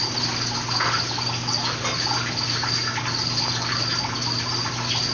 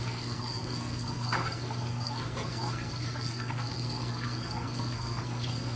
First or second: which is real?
first